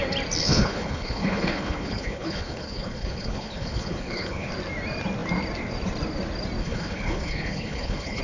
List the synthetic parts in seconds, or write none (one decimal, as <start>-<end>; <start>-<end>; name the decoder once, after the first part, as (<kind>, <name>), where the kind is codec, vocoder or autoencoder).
0.4-4.5 (codec, HILCodec); 6.6-8.2